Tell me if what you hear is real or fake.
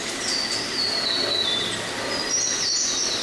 real